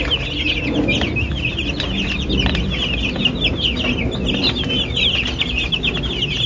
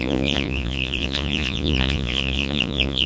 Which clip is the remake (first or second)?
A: second